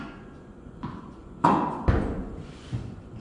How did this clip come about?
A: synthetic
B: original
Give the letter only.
A